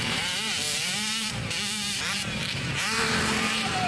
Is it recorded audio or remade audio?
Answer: remade